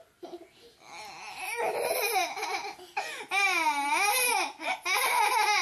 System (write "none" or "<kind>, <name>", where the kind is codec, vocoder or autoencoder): none